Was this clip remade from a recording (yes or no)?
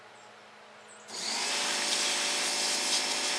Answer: no